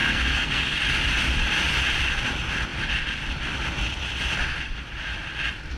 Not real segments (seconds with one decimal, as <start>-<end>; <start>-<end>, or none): 0.0-0.8